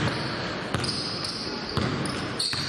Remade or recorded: recorded